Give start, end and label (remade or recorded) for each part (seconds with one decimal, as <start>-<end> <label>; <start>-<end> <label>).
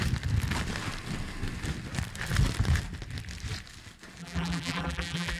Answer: 0.0-4.2 recorded; 4.2-5.4 remade